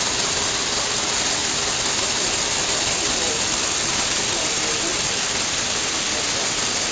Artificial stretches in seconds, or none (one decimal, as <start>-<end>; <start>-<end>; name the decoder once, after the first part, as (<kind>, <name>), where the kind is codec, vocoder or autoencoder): none